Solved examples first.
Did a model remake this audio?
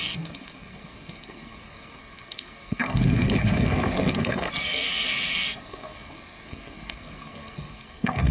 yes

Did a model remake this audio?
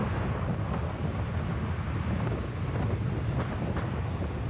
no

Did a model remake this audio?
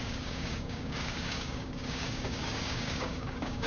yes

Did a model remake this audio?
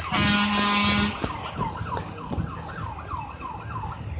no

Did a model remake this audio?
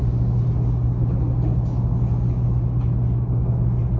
no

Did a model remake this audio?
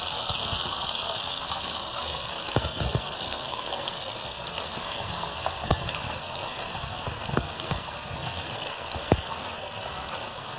yes